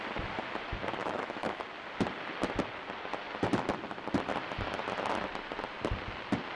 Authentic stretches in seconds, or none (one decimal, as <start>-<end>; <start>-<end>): 0.0-1.0; 1.6-6.5